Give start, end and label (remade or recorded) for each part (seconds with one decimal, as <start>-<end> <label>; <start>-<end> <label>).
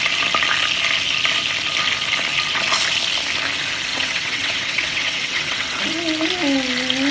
0.0-3.9 recorded; 3.9-5.8 remade; 5.8-7.1 recorded